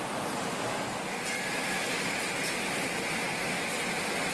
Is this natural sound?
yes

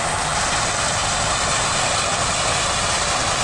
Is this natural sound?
yes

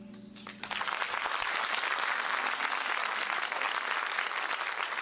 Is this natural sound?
yes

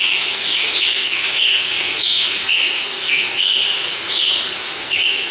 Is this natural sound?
no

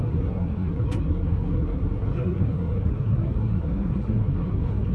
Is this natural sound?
no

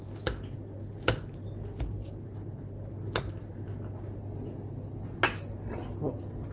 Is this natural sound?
yes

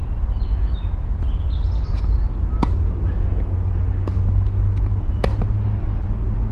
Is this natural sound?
yes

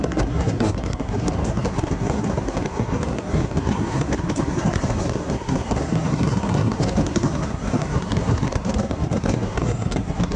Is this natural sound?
no